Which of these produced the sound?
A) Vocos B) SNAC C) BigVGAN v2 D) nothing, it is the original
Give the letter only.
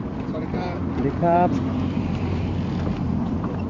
C